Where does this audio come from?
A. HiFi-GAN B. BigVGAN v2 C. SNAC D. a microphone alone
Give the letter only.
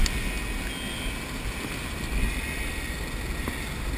D